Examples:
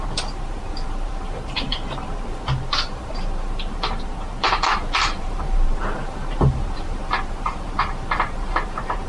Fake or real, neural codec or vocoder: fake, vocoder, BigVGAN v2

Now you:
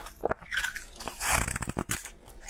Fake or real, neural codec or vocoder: fake, vocoder, BigVGAN v2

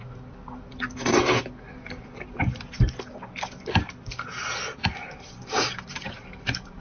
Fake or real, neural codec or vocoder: real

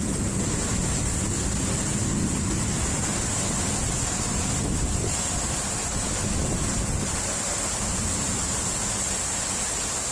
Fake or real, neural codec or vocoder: real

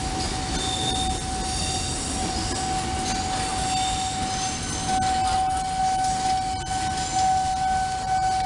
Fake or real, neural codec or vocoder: real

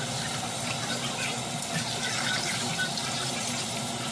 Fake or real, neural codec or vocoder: real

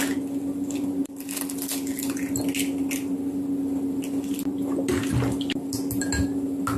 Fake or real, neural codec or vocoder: real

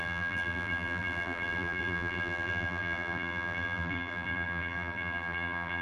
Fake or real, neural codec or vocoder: fake, vocoder, BigVGAN v2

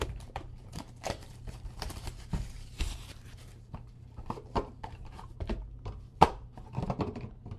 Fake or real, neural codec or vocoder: fake, vocoder, BigVGAN v2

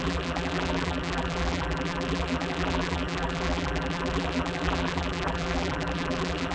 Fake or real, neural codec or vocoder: fake, vocoder, BigVGAN v2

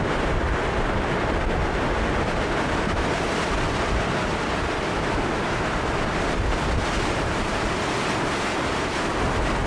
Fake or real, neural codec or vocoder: real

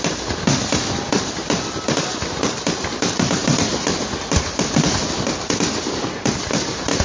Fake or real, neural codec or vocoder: fake, vocoder, BigVGAN v2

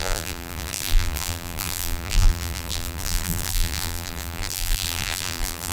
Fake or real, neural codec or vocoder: fake, vocoder, BigVGAN v2